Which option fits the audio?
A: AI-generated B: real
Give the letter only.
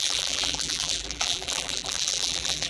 A